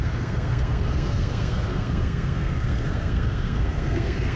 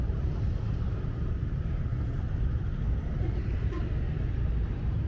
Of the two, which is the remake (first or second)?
first